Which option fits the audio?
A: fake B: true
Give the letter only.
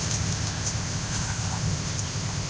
A